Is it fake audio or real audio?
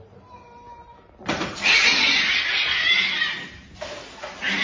real